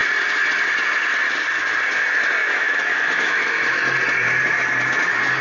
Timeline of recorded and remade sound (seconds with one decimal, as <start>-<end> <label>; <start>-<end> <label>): 0.0-2.4 recorded; 2.4-3.8 remade; 3.8-5.4 recorded